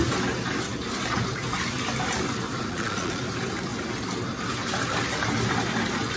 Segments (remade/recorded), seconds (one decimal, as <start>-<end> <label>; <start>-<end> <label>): 0.0-2.7 recorded; 2.7-3.2 remade; 3.2-6.2 recorded